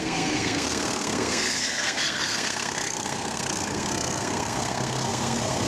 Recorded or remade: remade